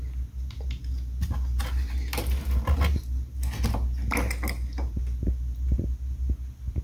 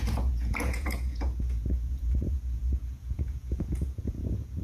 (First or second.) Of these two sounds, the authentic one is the first